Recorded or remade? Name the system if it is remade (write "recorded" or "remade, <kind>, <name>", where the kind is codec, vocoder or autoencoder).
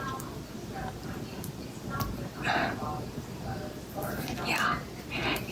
recorded